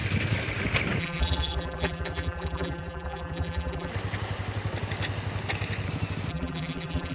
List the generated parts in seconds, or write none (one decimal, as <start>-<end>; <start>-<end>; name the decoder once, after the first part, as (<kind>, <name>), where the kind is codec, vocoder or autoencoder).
1.0-3.9 (vocoder, BigVGAN v2); 6.3-7.1